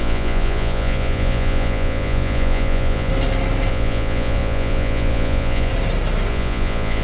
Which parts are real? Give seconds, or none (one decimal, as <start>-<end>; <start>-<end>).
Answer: 3.1-3.7; 5.7-6.3